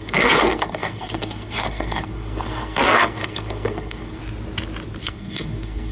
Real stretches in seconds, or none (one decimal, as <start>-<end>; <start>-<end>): 4.2-5.0